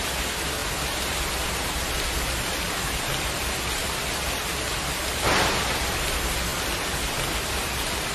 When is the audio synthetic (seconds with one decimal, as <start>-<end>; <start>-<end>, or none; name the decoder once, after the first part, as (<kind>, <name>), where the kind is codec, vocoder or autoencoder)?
none